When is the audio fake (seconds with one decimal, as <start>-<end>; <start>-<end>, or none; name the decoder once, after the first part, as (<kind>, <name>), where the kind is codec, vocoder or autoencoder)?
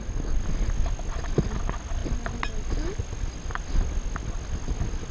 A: none